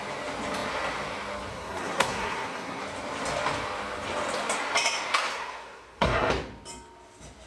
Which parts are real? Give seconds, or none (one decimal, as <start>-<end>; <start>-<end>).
0.0-1.5; 2.8-5.3; 6.3-7.5